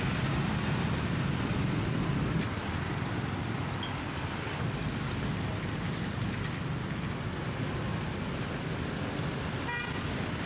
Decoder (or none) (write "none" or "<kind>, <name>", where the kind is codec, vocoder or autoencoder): none